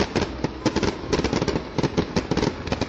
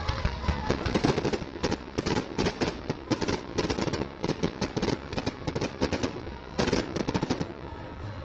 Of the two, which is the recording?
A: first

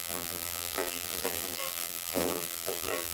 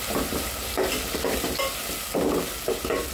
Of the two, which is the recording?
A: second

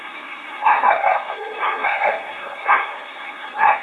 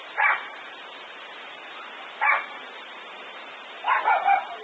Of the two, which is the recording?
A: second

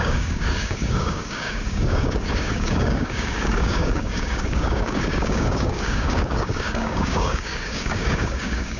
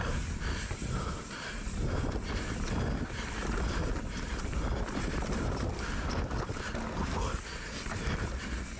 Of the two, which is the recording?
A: second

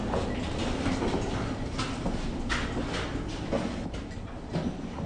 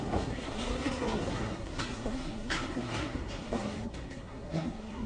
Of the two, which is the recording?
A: first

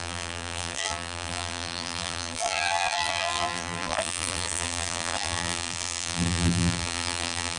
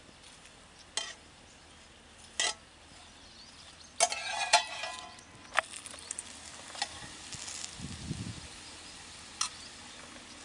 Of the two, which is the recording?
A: second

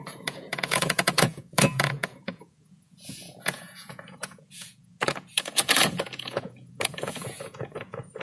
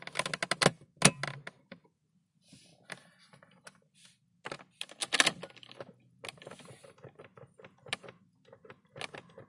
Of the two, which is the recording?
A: second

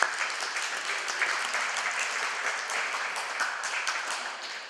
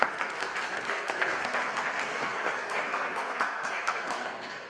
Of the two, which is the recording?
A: first